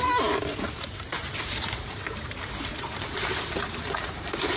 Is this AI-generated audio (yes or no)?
yes